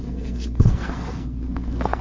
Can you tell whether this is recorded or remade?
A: remade